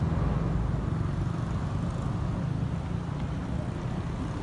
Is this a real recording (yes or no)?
yes